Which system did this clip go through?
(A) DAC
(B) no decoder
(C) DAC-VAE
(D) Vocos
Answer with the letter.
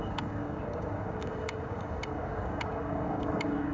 A